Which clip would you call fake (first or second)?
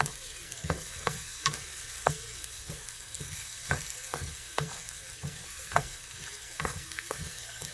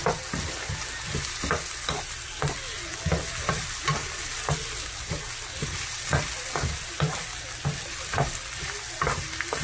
first